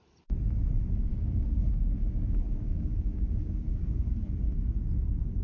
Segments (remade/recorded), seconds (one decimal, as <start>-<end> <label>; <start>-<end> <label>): 0.0-1.1 recorded; 1.1-4.3 remade; 4.3-5.4 recorded